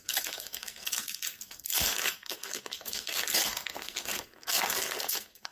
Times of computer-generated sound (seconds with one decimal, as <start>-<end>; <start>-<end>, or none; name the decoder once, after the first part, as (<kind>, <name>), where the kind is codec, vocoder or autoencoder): 0.0-5.5 (codec, SNAC)